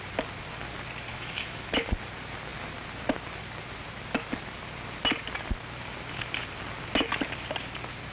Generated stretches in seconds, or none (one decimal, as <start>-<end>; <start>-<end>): 1.1-1.8